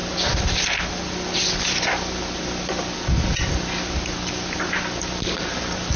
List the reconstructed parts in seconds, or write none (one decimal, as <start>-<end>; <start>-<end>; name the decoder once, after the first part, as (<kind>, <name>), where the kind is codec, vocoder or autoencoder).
none